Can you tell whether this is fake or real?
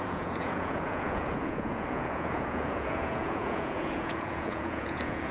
fake